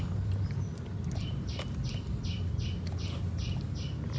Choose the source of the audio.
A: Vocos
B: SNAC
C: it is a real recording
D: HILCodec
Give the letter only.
C